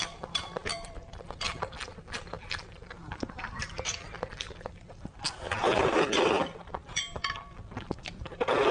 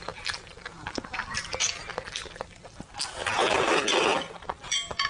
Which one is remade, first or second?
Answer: first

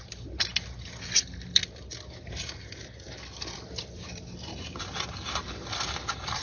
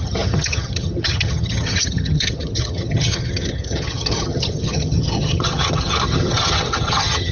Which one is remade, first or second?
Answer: second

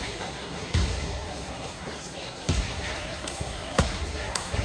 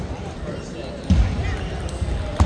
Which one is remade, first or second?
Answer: first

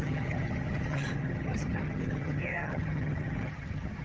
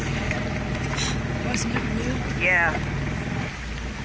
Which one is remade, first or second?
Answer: first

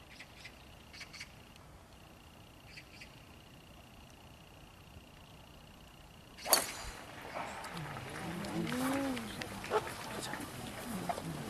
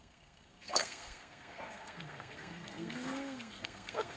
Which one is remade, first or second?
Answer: second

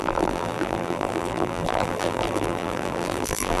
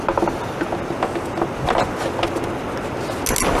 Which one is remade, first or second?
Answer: first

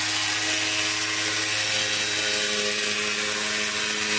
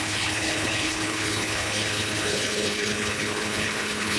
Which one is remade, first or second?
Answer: second